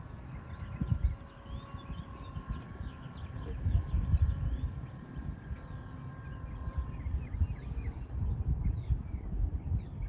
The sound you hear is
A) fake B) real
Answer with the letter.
B